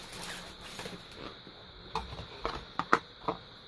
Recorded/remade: recorded